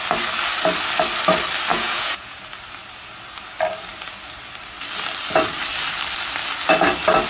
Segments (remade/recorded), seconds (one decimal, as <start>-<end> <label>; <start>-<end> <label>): 0.0-1.7 recorded; 1.7-2.4 remade; 2.4-7.3 recorded